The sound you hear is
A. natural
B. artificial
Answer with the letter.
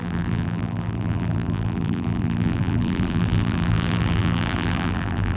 B